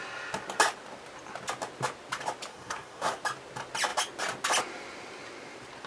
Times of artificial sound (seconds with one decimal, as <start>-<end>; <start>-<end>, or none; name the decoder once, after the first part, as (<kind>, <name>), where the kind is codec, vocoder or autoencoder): 2.5-3.2 (codec, SNAC)